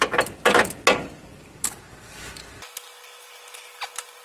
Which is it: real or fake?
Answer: real